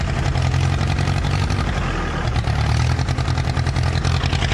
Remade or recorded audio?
recorded